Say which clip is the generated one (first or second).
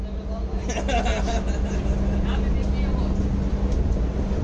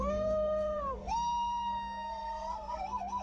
second